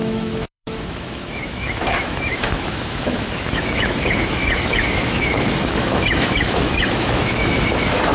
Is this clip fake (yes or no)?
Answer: yes